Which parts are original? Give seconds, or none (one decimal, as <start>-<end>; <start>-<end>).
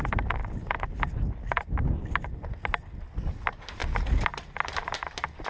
0.0-5.5